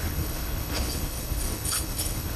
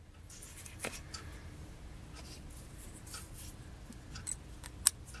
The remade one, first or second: first